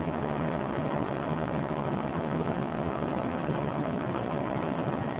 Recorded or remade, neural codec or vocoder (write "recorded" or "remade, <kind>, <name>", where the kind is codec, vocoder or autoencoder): remade, vocoder, WaveNeXt